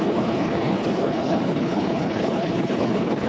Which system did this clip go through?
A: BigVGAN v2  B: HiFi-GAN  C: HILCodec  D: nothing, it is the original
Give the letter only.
C